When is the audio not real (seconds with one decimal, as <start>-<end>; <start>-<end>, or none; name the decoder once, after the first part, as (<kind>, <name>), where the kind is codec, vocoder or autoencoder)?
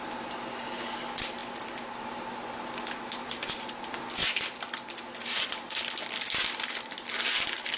none